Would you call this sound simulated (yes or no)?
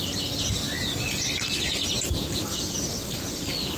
no